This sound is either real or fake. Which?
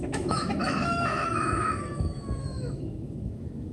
fake